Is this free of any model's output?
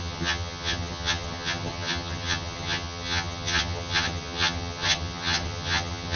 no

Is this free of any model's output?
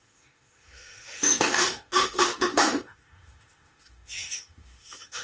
no